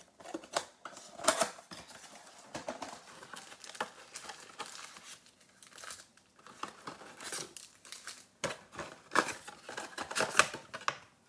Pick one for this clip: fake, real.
real